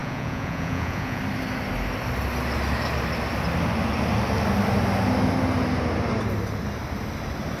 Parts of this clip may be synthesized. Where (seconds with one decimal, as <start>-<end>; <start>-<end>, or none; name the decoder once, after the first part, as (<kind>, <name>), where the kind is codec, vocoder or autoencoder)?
0.0-1.2 (vocoder, Vocos)